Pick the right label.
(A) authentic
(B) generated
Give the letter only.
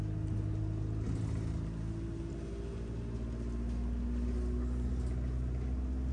A